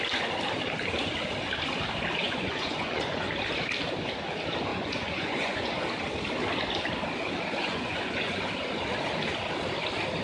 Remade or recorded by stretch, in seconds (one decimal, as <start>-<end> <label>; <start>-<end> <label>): 0.0-2.2 recorded; 2.2-3.3 remade; 3.3-4.7 recorded; 4.7-5.8 remade; 5.8-7.6 recorded; 7.6-8.4 remade; 8.4-10.2 recorded